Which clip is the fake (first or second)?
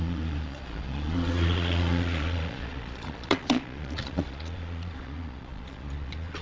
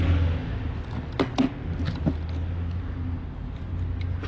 first